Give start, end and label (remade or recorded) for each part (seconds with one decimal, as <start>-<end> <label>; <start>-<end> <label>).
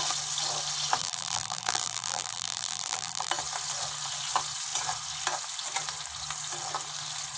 0.0-1.0 recorded; 1.0-3.3 remade; 3.3-7.4 recorded